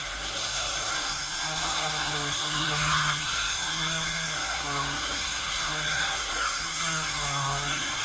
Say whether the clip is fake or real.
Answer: fake